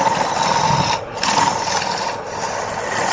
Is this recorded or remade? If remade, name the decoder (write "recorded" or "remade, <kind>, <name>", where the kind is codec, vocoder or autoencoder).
recorded